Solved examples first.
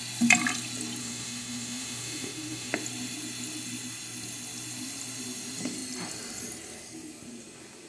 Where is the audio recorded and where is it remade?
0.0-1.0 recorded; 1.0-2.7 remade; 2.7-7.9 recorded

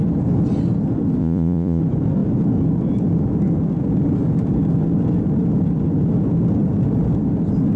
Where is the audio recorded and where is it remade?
0.0-1.2 recorded; 1.2-1.8 remade; 1.8-7.8 recorded

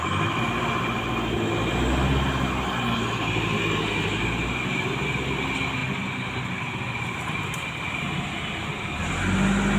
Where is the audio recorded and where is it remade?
0.0-9.8 recorded

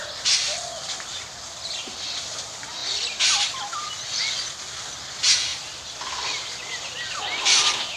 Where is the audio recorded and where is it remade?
0.0-2.8 recorded; 2.8-3.9 remade; 3.9-8.0 recorded

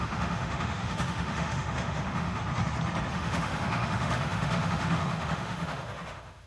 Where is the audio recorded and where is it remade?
0.0-2.4 remade; 2.4-3.1 recorded; 3.1-6.5 remade